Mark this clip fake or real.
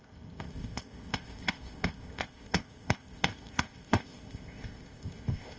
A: fake